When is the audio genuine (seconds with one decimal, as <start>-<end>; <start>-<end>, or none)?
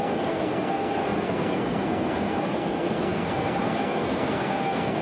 none